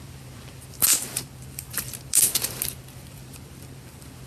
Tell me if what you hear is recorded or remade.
remade